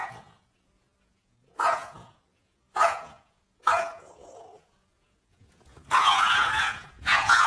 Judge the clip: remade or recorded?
remade